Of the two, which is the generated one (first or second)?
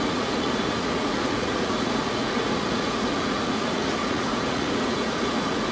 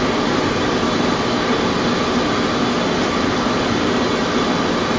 first